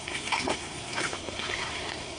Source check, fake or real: fake